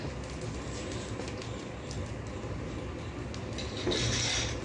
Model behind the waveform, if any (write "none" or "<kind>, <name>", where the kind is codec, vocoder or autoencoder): none